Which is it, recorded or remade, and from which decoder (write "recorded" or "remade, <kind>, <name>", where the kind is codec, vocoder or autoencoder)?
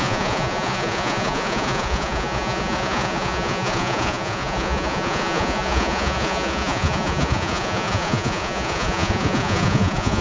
remade, vocoder, Vocos